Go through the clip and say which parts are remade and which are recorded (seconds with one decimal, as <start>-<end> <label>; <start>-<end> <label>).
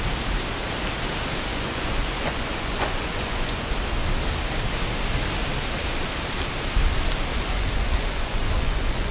0.0-1.5 recorded; 1.5-3.7 remade; 3.7-7.3 recorded; 7.3-9.1 remade